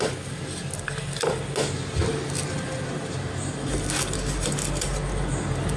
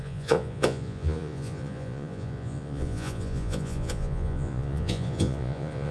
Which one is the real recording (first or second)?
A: first